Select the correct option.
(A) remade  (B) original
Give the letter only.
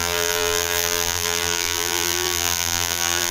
A